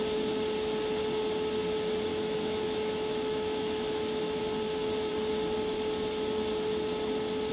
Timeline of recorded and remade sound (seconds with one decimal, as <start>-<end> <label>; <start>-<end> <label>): 0.0-2.1 recorded; 2.1-4.4 remade; 4.4-7.5 recorded